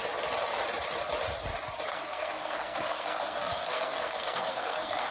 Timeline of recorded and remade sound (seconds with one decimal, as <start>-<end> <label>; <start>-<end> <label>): 0.0-1.9 recorded; 1.9-5.1 remade